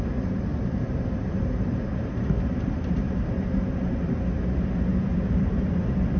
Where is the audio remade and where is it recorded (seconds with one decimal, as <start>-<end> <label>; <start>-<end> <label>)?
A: 0.0-0.5 recorded; 0.5-4.2 remade; 4.2-4.9 recorded; 4.9-5.7 remade; 5.7-6.2 recorded